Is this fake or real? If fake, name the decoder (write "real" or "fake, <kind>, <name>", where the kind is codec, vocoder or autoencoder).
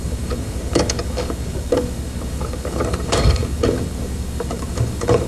fake, codec, DAC